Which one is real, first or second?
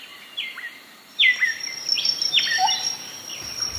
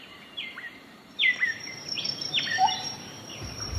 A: first